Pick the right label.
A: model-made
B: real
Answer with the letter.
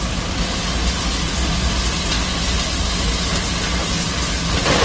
B